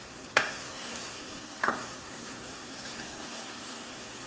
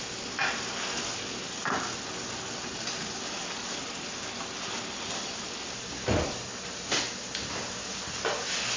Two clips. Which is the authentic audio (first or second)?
second